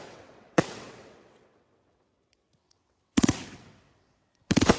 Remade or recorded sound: remade